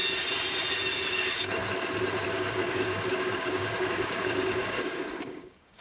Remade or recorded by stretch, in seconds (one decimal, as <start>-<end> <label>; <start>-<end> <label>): 0.0-1.1 recorded; 1.1-1.6 remade; 1.6-2.3 recorded; 2.3-5.8 remade